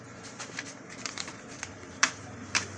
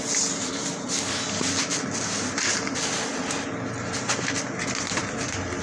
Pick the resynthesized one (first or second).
first